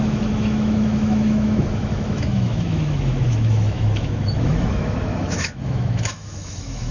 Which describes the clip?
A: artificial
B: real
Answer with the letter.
A